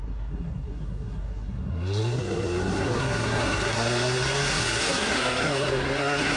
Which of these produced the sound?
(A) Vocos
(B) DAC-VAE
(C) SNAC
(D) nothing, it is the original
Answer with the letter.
C